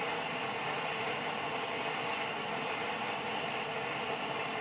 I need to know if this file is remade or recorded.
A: recorded